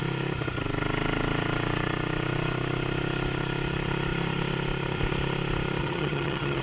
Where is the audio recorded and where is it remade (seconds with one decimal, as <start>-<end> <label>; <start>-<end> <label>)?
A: 0.0-5.8 recorded; 5.8-6.6 remade